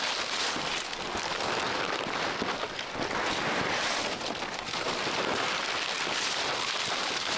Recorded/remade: recorded